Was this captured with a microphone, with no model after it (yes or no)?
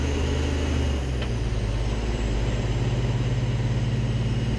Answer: yes